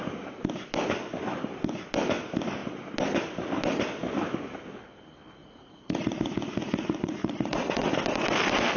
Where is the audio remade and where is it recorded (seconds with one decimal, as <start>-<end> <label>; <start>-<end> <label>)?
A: 0.0-5.4 recorded; 5.4-7.9 remade; 7.9-8.8 recorded